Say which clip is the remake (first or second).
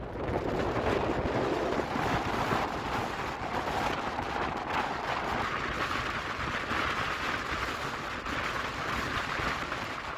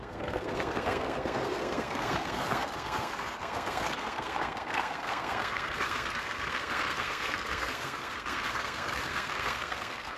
second